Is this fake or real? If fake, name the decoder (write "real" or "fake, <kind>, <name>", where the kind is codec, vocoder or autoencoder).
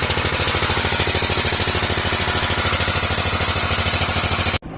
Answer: real